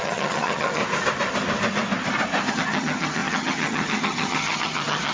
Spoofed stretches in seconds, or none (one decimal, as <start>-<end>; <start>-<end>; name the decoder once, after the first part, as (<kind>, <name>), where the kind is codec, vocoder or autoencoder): 0.0-0.8 (vocoder, HiFi-GAN); 2.5-5.1